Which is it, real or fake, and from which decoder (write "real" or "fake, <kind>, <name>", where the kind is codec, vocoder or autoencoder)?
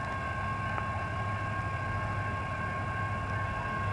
real